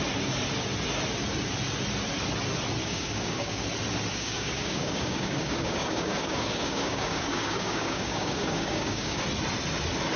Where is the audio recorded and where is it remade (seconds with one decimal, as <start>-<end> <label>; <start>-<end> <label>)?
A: 0.0-2.8 recorded; 2.8-3.6 remade; 3.6-4.1 recorded; 4.1-9.2 remade; 9.2-10.2 recorded